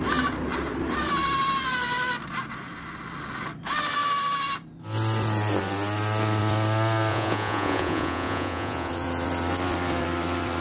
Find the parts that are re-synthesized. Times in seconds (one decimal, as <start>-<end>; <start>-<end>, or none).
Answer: 7.1-8.9